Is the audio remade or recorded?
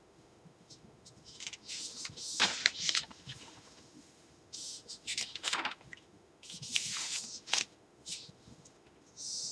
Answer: remade